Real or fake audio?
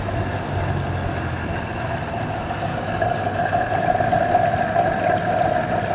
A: real